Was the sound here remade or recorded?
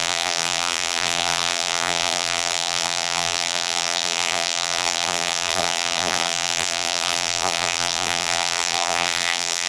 remade